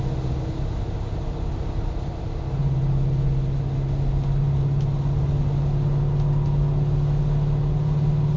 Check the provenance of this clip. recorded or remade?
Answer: recorded